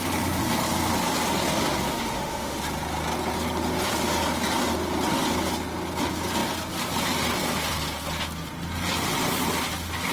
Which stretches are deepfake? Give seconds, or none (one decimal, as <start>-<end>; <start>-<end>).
1.9-2.6